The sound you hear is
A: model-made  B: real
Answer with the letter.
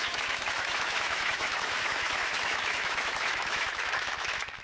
A